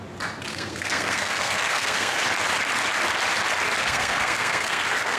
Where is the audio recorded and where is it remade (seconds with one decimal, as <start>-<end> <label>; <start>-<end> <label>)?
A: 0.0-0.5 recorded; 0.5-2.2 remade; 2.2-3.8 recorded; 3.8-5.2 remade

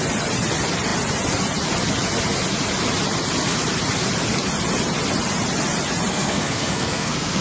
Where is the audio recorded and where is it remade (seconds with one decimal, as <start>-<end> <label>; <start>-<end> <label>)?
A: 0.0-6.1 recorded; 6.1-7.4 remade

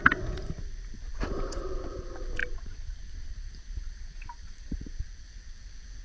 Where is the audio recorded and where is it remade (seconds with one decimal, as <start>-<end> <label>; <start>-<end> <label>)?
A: 0.0-2.4 recorded; 2.4-5.0 remade; 5.0-6.0 recorded